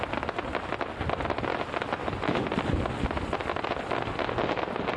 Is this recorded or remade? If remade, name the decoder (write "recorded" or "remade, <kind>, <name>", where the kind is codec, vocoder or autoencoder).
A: recorded